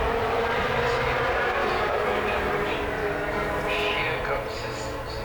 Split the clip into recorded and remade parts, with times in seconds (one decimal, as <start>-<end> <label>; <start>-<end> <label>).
0.0-1.6 recorded; 1.6-2.5 remade; 2.5-3.0 recorded; 3.0-3.6 remade; 3.6-5.2 recorded